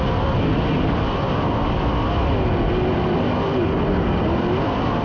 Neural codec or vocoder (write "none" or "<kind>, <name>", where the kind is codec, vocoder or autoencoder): none